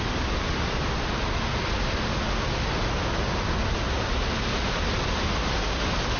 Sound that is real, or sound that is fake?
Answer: real